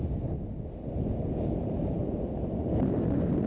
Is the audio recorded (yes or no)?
yes